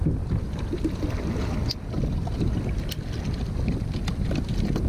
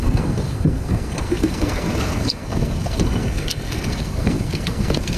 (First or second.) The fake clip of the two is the second